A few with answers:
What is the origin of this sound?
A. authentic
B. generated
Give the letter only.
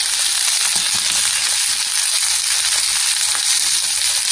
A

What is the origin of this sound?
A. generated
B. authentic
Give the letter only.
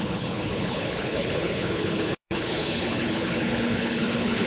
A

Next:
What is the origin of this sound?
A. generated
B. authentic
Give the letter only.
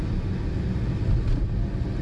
B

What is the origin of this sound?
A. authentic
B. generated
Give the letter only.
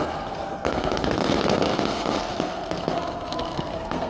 B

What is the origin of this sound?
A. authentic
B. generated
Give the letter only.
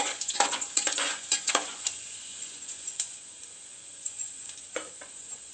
B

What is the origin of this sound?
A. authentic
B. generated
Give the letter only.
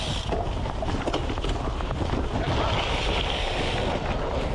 A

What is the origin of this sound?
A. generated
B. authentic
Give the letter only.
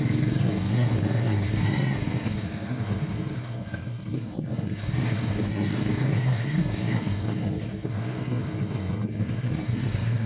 A